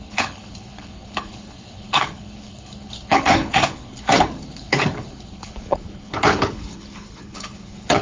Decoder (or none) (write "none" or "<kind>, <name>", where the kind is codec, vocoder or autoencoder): codec, HILCodec